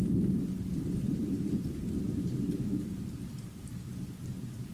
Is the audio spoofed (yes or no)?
yes